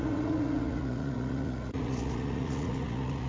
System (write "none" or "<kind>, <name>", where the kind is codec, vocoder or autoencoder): vocoder, Vocos